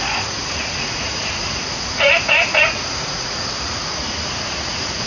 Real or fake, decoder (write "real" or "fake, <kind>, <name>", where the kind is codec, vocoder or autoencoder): fake, vocoder, Vocos